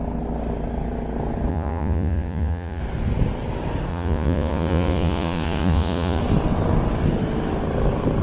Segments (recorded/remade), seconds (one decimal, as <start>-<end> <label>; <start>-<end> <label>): 0.0-1.5 recorded; 1.5-2.8 remade; 2.8-3.9 recorded; 3.9-6.2 remade; 6.2-8.2 recorded